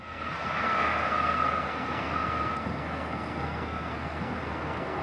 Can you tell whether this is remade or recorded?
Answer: remade